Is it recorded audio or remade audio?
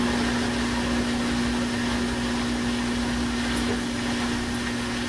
recorded